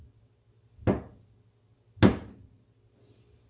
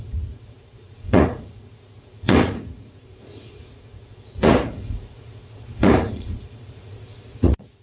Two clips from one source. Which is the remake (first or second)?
second